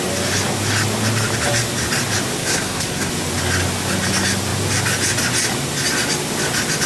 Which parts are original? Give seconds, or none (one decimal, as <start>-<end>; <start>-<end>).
0.0-2.4; 3.1-6.9